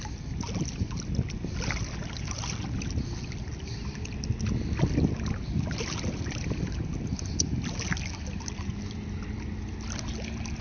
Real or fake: real